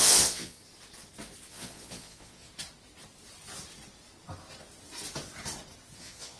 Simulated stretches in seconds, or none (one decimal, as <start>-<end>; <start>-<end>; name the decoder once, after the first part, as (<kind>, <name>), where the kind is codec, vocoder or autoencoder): 0.0-0.6 (vocoder, Vocos); 1.5-2.5; 6.0-6.4